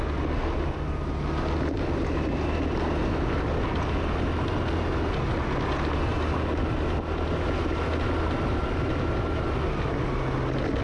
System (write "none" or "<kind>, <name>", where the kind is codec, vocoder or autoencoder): none